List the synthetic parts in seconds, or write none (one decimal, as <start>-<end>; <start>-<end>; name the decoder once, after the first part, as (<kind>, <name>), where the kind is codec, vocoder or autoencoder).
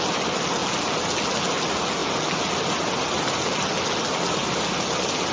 none